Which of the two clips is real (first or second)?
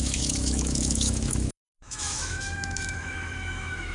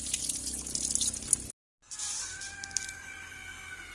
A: second